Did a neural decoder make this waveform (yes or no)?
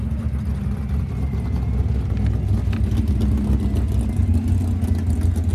no